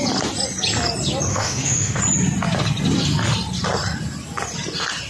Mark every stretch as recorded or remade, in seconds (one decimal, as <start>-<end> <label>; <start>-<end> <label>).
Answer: 0.0-1.3 recorded; 1.3-2.0 remade; 2.0-5.1 recorded